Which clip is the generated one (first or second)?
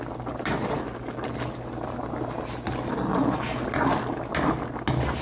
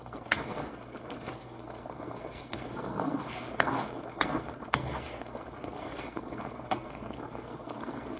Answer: second